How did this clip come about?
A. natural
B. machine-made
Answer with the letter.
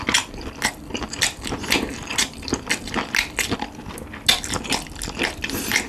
A